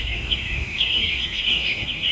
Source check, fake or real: fake